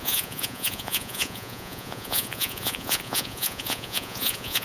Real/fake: fake